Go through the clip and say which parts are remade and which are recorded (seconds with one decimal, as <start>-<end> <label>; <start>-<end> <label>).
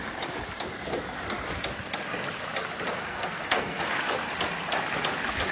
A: 0.0-3.1 recorded; 3.1-3.8 remade; 3.8-5.5 recorded